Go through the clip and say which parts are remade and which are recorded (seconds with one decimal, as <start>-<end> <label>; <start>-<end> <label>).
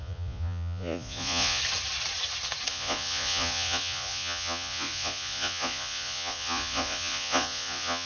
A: 0.0-1.6 remade; 1.6-2.7 recorded; 2.7-8.1 remade